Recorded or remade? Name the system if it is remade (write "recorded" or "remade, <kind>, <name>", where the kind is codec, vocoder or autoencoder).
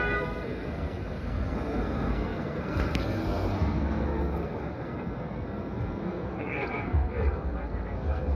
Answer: remade, codec, SNAC